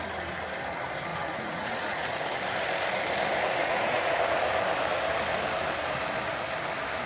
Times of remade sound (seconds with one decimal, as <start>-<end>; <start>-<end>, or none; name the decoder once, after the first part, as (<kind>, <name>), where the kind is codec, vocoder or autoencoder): 1.1-2.2 (vocoder, Vocos); 3.6-4.2